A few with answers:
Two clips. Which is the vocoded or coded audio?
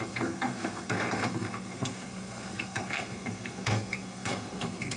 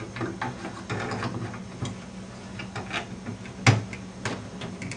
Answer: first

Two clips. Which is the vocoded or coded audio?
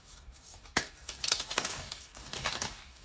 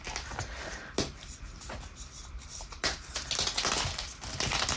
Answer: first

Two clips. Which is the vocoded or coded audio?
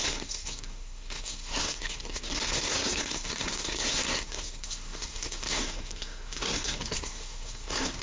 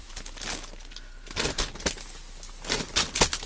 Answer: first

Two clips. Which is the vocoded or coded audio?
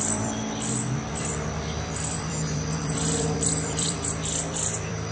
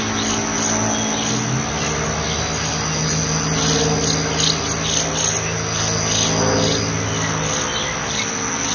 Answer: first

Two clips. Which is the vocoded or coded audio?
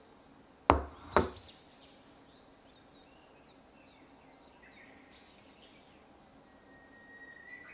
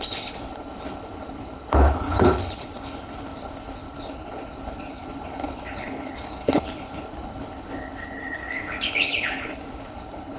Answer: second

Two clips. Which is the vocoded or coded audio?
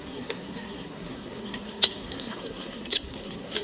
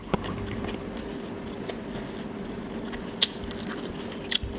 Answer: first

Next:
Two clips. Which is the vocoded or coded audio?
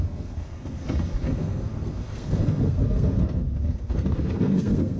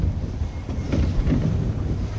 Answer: first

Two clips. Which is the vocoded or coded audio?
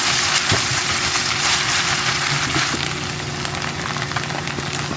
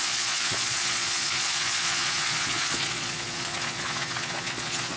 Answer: second